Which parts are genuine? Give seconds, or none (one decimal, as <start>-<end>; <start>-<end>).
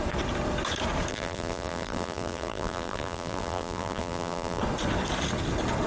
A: 0.0-1.1; 4.6-5.9